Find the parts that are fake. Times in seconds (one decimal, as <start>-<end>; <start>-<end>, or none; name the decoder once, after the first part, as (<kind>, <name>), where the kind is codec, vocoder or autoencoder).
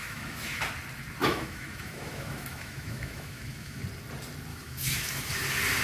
0.0-0.6 (autoencoder, DAC-VAE); 1.2-3.8; 4.5-5.3